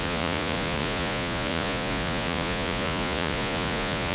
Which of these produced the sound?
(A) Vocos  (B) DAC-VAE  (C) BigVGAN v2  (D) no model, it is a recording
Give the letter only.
A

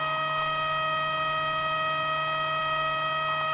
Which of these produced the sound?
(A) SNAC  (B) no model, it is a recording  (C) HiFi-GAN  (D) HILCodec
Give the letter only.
B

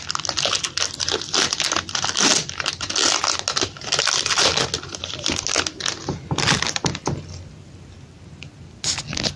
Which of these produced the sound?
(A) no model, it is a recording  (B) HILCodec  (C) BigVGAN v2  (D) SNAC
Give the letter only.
A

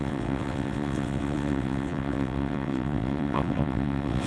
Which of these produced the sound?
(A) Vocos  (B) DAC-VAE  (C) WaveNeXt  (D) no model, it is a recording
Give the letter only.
C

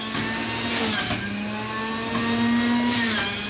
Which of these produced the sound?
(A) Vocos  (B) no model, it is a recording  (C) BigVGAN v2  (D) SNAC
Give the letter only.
B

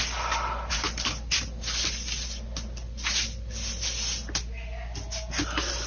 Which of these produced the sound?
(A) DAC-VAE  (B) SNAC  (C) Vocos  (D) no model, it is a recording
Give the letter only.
D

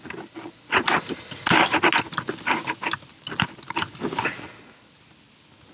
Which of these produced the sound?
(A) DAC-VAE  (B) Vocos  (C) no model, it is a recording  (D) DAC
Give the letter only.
C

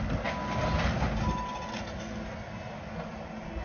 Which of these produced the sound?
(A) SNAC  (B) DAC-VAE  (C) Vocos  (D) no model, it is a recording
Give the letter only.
D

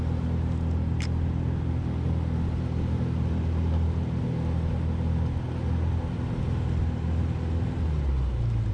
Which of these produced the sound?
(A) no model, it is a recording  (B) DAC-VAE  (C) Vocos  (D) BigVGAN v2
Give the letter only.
A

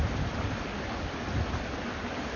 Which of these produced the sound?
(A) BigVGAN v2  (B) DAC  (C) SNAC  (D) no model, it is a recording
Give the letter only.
D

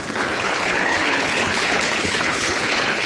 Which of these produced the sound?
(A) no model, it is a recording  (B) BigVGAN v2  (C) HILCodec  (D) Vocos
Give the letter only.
C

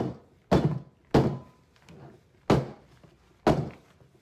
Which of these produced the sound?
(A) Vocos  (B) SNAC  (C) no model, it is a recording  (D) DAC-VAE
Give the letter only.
C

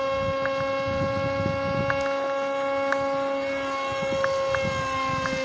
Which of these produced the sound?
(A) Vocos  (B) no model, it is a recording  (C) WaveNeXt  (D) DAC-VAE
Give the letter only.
B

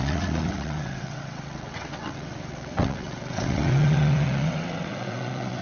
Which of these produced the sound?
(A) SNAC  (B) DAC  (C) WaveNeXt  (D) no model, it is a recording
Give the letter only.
C